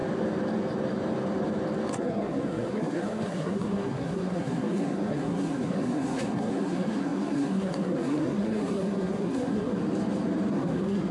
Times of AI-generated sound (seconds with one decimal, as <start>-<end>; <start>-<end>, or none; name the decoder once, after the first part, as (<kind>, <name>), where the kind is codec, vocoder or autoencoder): 1.9-9.8 (codec, SNAC); 10.5-11.1